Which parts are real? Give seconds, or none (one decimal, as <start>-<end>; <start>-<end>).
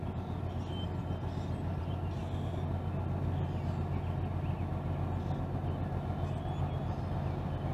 0.0-7.7